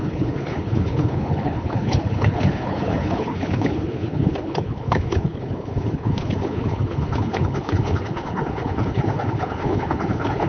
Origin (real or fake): fake